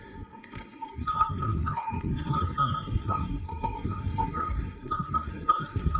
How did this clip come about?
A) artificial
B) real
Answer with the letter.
A